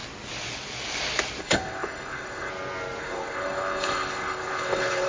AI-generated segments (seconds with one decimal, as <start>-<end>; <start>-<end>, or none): 1.4-2.5; 3.0-5.1

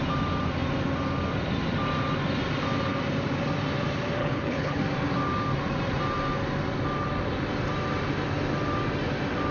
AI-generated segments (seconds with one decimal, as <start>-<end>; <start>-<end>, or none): 4.2-4.8

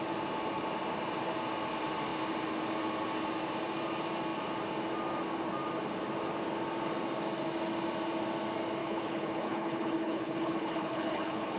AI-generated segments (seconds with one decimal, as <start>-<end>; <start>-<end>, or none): 8.8-11.6

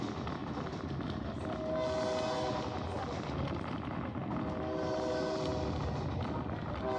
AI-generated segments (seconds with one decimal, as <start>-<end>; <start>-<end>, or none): none

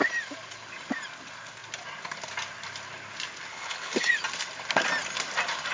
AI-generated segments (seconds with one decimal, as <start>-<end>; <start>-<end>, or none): 3.5-4.1

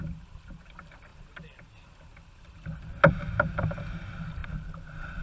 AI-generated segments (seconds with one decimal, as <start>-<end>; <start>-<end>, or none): none

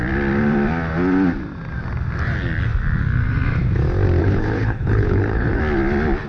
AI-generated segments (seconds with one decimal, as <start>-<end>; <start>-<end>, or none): 4.2-5.6

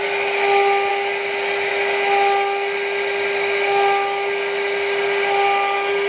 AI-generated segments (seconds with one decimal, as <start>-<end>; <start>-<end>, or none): none